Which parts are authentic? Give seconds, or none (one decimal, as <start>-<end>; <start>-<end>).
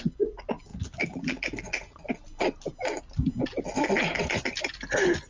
0.0-5.3